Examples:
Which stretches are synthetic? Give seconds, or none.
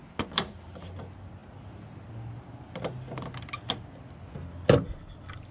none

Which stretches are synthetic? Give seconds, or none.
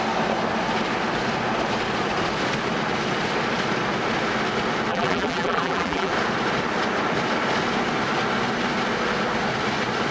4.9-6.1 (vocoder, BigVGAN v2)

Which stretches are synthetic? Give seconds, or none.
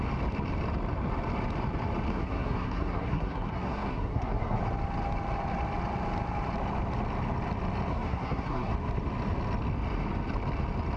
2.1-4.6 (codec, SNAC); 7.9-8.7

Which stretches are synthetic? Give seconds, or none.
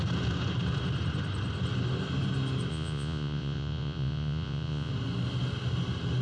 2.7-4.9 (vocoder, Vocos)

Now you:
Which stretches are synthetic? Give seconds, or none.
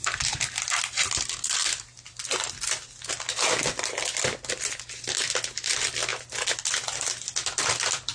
none